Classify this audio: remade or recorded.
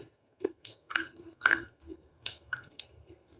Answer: remade